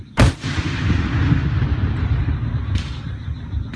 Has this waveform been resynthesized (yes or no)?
no